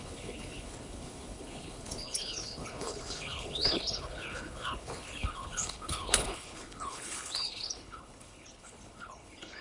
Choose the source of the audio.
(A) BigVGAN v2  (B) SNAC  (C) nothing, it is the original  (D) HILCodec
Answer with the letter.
D